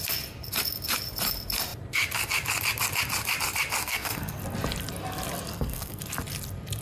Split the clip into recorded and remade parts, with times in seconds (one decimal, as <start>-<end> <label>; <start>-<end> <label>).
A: 0.0-3.8 recorded; 3.8-4.4 remade; 4.4-5.5 recorded; 5.5-6.0 remade; 6.0-6.8 recorded